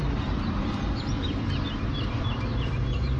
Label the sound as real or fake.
real